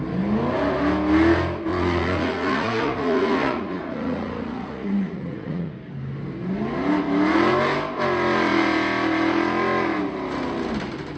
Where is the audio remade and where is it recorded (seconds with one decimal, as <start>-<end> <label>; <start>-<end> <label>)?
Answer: 0.0-1.7 recorded; 1.7-5.7 remade; 5.7-11.2 recorded